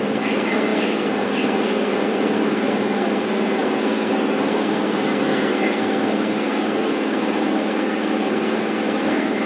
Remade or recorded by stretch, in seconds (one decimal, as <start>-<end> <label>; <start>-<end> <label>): 0.0-9.5 remade